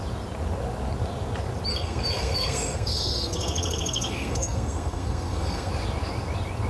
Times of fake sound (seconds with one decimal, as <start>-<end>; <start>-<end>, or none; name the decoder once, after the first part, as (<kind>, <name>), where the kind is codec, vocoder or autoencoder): 1.7-5.7 (codec, SNAC)